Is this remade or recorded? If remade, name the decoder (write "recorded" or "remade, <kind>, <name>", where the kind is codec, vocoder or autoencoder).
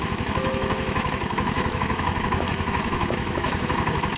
remade, autoencoder, DAC-VAE